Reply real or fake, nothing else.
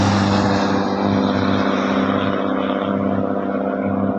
real